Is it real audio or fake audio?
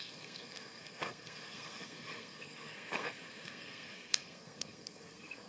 fake